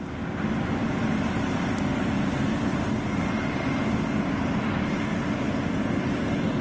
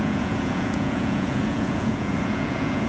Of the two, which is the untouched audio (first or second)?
first